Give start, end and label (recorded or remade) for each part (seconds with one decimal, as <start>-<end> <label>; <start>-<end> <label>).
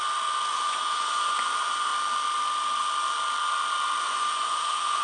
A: 0.0-0.5 recorded; 0.5-1.9 remade; 1.9-4.0 recorded; 4.0-5.0 remade